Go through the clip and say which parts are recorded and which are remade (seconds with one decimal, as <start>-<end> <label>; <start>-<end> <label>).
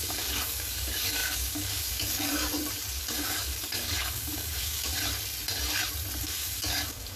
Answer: 0.0-2.5 remade; 2.5-3.0 recorded; 3.0-4.9 remade; 4.9-6.2 recorded; 6.2-7.2 remade